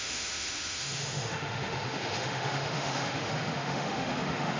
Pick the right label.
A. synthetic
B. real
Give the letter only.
A